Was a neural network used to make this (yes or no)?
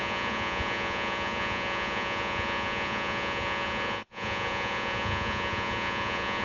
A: yes